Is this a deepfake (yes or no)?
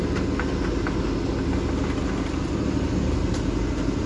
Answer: no